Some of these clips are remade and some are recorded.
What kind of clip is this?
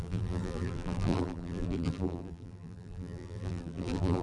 remade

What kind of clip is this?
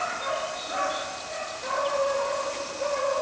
recorded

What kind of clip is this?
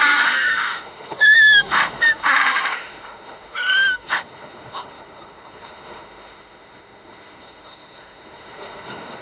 remade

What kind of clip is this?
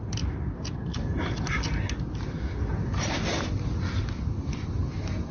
recorded